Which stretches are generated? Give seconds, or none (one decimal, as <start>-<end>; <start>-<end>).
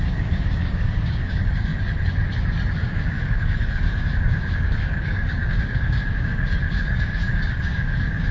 0.0-1.7; 2.8-8.3